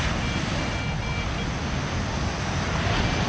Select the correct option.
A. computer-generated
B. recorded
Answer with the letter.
B